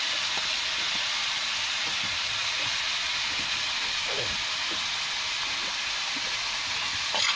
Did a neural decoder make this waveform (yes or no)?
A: no